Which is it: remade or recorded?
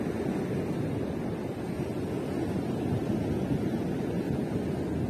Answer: recorded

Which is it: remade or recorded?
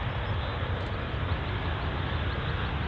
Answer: recorded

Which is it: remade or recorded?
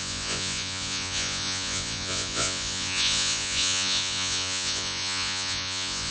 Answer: remade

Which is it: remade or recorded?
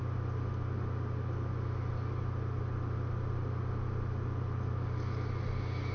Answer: recorded